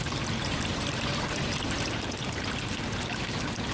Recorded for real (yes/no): yes